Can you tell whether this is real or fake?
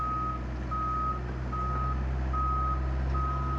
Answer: real